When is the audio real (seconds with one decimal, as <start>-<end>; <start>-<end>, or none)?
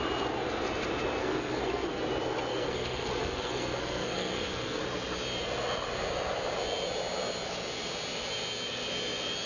0.0-1.2; 2.0-2.5; 4.8-9.5